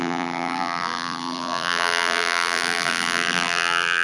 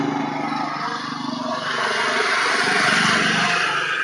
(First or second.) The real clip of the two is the second